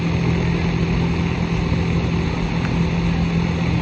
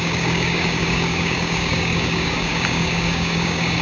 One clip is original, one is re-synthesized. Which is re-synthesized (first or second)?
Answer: second